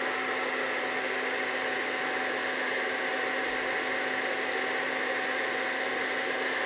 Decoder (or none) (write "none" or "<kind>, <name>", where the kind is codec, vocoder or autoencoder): none